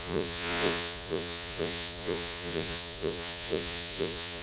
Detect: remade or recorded remade